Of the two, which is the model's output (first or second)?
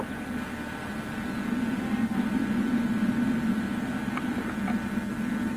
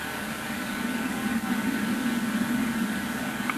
second